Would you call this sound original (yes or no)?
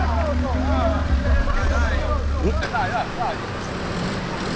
yes